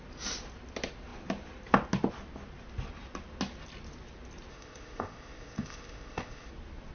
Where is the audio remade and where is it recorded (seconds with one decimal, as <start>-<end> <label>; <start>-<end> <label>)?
0.0-4.5 recorded; 4.5-6.5 remade; 6.5-6.9 recorded